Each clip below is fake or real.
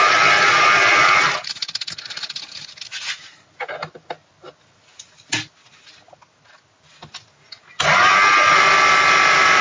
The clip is real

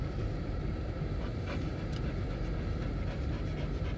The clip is real